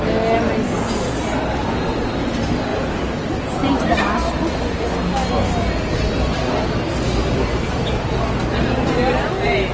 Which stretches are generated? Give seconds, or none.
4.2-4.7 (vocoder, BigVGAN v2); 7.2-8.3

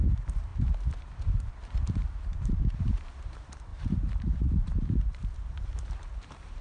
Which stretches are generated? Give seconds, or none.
0.0-0.5 (vocoder, BigVGAN v2); 1.5-6.6